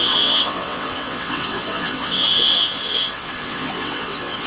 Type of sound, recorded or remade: remade